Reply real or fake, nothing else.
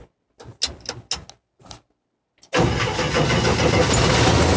real